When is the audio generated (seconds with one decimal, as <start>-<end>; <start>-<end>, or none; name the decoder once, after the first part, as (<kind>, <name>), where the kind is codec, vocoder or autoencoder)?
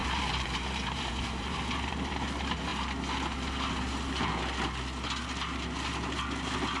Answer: 0.0-2.7 (vocoder, BigVGAN v2)